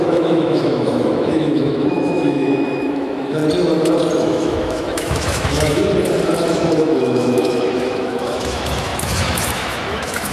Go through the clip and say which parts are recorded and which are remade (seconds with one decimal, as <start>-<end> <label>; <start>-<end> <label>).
0.0-3.4 remade; 3.4-4.2 recorded; 4.2-5.8 remade; 5.8-6.5 recorded; 6.5-10.3 remade